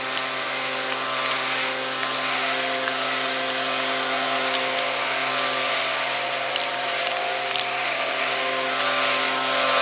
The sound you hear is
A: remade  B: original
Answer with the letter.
B